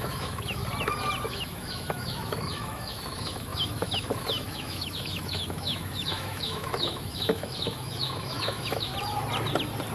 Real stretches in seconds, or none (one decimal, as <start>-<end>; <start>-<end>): 0.6-1.3; 8.9-9.9